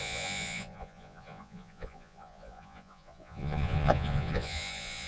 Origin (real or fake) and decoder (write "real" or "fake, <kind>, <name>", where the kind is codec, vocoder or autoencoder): fake, vocoder, Vocos